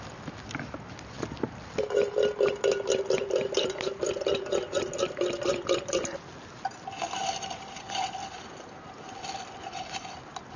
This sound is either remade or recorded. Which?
recorded